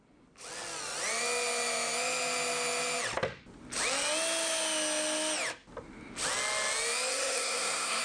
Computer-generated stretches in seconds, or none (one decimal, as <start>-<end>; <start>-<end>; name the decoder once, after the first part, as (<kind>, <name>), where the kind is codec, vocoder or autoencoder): 7.1-8.0 (codec, SNAC)